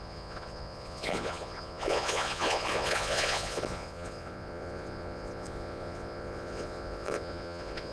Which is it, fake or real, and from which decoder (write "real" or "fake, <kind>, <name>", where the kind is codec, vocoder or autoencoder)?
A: fake, vocoder, Vocos